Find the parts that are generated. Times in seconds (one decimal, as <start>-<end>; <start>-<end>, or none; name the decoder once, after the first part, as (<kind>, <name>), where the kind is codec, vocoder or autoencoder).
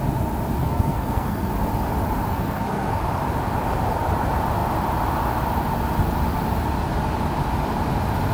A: 0.6-1.5 (codec, SNAC); 2.3-3.0